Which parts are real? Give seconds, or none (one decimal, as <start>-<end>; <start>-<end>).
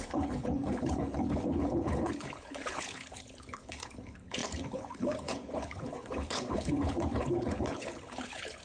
none